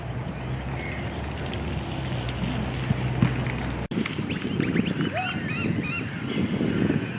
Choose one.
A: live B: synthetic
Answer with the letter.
A